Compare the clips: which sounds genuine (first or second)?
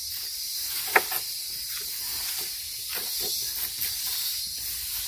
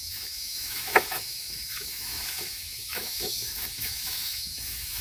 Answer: first